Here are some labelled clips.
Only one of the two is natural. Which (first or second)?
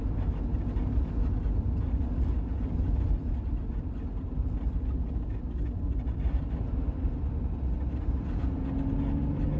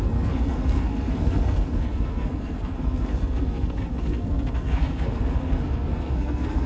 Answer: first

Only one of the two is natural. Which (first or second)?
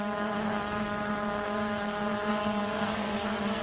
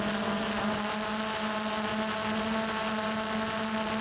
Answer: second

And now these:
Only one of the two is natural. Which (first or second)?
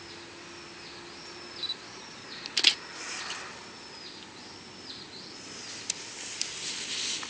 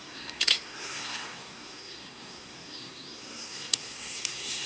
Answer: first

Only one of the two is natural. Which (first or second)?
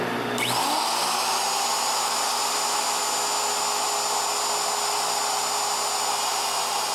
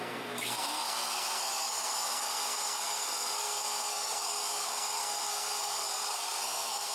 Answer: first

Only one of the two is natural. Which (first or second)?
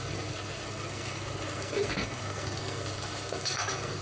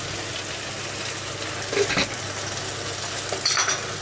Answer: second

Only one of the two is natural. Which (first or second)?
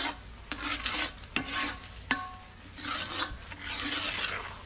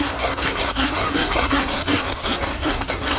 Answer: first